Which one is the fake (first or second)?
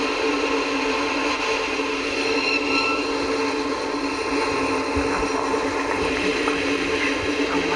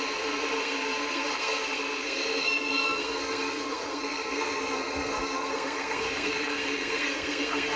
second